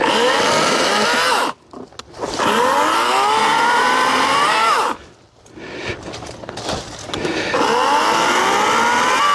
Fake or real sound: real